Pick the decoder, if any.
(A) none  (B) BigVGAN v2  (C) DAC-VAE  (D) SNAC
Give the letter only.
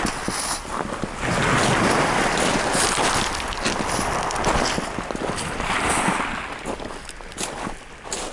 A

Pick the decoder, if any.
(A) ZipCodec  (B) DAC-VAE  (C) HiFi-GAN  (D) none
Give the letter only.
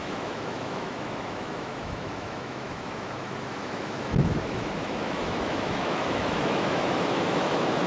B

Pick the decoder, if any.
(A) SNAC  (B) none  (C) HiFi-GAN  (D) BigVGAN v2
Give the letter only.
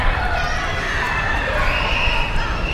B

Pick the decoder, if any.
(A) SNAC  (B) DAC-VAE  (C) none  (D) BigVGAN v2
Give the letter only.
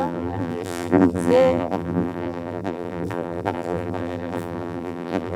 D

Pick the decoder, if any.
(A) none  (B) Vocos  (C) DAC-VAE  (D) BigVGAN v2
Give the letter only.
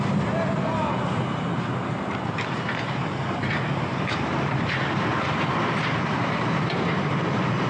D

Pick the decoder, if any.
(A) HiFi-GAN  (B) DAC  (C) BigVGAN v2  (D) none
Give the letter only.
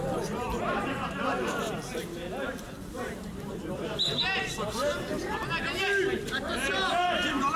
C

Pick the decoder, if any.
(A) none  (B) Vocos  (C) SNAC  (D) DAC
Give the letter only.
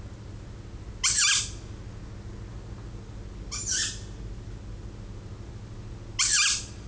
A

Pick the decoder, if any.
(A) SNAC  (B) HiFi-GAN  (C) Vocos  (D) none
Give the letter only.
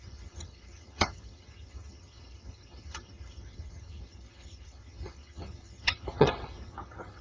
B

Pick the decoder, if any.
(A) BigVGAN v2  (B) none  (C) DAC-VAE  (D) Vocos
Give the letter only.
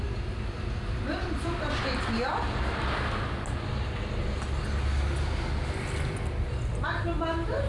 B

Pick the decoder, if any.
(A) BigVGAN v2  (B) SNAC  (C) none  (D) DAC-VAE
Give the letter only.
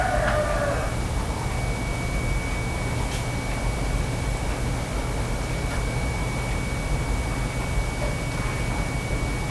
C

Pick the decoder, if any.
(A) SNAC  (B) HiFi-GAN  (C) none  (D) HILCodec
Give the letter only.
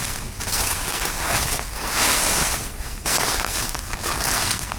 A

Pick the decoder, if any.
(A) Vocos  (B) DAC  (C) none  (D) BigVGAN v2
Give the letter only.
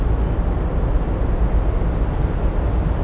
C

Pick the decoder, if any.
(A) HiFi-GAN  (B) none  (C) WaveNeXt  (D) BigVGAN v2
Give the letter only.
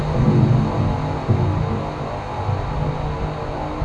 B